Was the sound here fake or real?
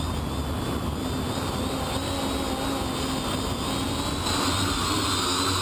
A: real